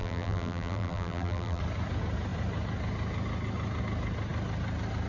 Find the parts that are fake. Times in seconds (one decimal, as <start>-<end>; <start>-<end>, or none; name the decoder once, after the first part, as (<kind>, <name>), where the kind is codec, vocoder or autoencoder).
0.0-1.6 (vocoder, BigVGAN v2)